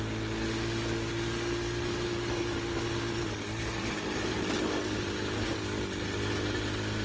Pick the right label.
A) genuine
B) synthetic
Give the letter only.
A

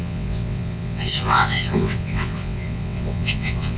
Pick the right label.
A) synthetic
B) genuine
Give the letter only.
A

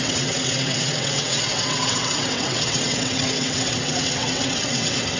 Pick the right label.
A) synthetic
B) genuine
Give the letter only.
A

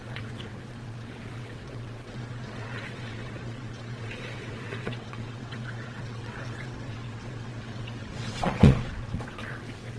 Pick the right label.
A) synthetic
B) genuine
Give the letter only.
A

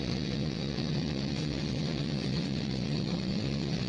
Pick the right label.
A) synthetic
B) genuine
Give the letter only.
A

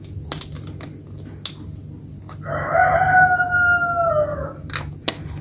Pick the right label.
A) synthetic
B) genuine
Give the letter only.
B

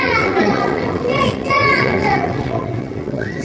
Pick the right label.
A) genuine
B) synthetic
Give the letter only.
B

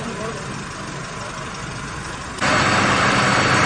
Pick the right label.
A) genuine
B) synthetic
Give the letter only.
A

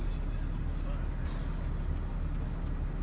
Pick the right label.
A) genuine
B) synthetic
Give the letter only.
A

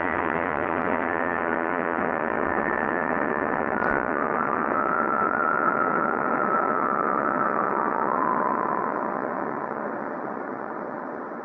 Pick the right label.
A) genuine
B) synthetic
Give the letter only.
B